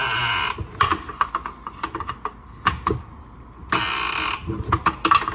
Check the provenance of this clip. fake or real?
real